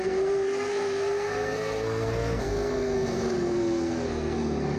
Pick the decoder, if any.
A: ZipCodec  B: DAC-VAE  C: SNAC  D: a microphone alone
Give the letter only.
C